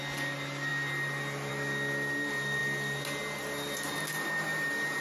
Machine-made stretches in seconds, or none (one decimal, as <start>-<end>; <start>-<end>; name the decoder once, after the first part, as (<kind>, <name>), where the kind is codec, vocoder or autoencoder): none